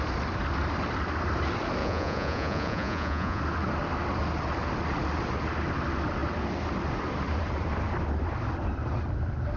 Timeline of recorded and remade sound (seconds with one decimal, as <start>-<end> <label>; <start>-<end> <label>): 0.0-1.8 recorded; 1.8-3.4 remade; 3.4-9.6 recorded